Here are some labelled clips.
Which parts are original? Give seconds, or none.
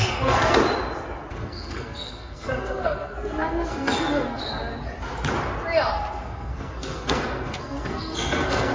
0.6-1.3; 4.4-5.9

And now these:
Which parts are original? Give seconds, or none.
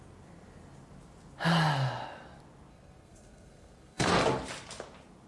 0.0-2.7; 4.1-5.3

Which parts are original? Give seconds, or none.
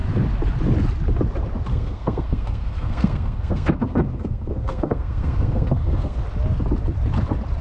0.0-1.7; 6.2-7.6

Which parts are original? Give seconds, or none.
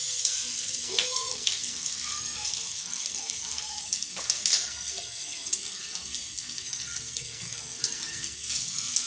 none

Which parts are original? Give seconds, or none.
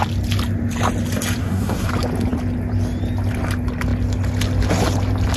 0.0-1.4; 1.9-5.4